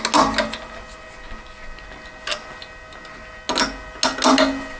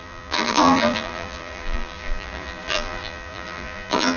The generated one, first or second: second